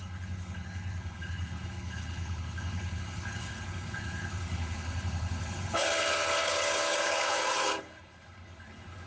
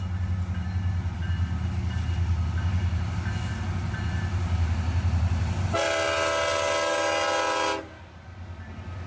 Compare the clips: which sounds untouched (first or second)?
second